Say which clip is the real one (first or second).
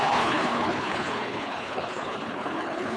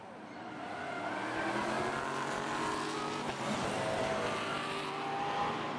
second